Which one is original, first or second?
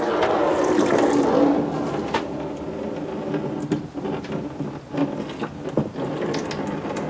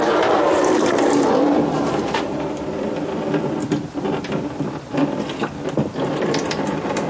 first